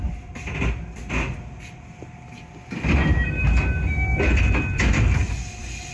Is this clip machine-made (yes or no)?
no